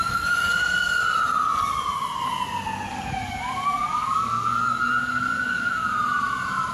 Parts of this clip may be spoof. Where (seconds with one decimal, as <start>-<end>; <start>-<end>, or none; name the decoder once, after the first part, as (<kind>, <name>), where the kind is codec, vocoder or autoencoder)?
0.0-0.5 (codec, DAC); 2.9-5.8